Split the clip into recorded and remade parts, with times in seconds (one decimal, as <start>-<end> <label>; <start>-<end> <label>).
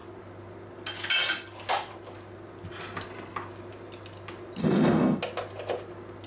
0.0-4.6 recorded; 4.6-5.2 remade; 5.2-6.3 recorded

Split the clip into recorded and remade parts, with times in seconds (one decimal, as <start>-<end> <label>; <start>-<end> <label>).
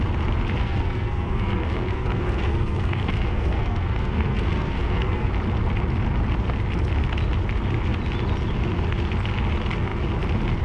0.0-0.6 recorded; 0.6-5.3 remade; 5.3-10.6 recorded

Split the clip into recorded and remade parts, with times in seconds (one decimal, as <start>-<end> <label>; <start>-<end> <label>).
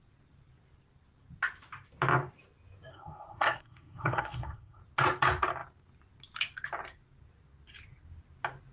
0.0-2.9 recorded; 2.9-4.8 remade; 4.8-8.7 recorded